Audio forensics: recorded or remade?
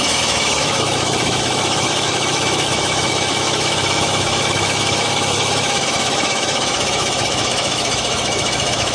remade